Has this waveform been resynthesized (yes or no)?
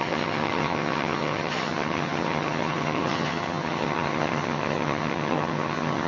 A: yes